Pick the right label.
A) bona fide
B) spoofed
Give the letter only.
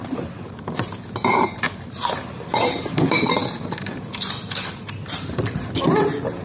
B